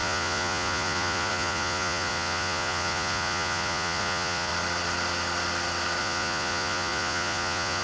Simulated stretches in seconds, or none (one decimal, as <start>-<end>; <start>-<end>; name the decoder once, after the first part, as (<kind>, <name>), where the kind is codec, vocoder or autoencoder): 0.0-4.5 (vocoder, Vocos); 6.0-7.8